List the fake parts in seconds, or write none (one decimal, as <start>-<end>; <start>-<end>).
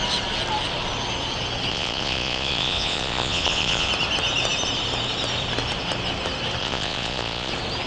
1.7-3.9; 6.6-7.5